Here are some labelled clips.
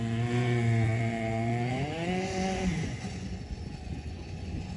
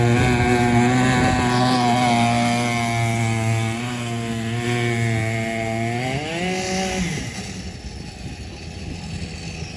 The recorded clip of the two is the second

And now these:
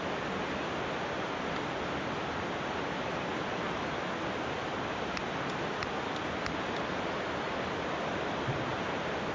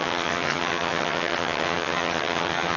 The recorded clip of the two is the first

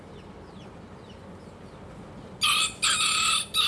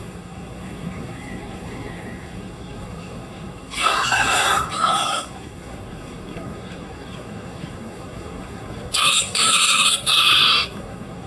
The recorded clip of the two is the first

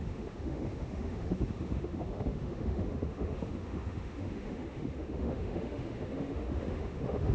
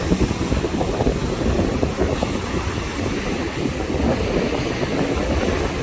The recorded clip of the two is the second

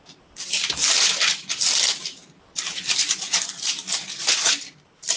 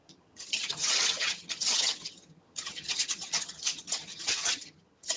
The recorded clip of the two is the first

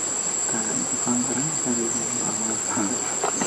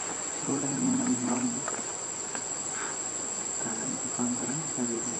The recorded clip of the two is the first